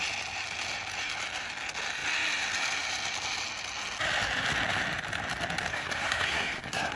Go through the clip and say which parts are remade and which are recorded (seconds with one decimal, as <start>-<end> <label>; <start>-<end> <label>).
0.0-5.7 recorded; 5.7-7.0 remade